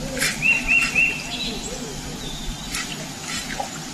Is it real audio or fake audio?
real